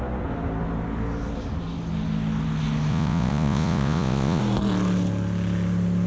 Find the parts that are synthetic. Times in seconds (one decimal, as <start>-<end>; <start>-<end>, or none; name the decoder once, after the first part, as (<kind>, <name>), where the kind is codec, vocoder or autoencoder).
2.9-4.4 (vocoder, Vocos)